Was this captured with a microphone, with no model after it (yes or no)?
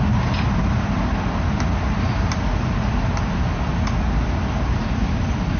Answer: yes